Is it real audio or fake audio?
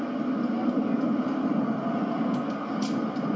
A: real